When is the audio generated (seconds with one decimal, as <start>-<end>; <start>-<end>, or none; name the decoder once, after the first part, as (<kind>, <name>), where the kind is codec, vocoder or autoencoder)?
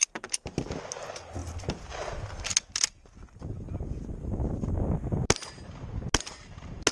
none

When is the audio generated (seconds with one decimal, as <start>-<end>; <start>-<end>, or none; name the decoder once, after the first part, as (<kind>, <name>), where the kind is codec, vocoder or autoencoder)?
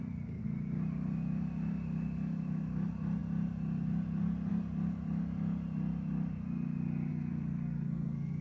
7.1-8.4 (codec, SNAC)